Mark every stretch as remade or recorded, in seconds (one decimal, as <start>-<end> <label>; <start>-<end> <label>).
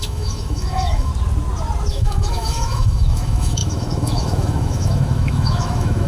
0.0-1.1 remade; 1.1-1.9 recorded; 1.9-6.1 remade